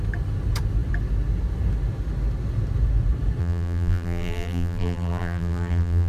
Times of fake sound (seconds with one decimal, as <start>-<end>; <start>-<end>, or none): 3.4-6.1